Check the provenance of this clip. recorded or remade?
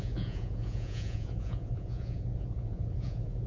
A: remade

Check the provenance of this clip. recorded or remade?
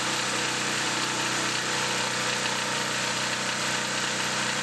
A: recorded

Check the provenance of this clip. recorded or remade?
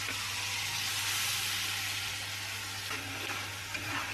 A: recorded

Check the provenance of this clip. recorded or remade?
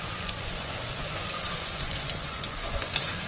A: remade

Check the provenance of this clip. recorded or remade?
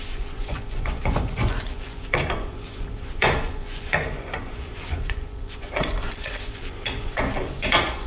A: remade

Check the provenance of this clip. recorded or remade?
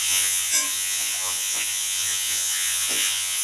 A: remade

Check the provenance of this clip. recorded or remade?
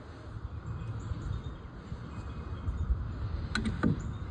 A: recorded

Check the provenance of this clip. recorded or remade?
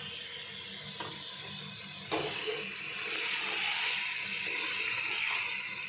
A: recorded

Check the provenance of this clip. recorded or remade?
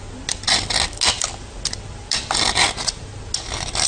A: recorded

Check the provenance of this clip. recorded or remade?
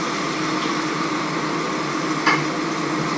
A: recorded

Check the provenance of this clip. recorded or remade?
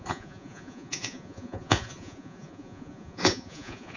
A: remade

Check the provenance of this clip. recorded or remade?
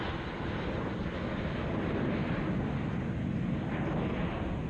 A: recorded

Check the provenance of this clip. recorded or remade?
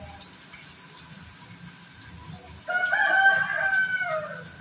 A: recorded